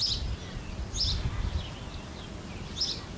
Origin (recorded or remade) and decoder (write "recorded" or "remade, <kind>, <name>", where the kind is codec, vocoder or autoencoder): recorded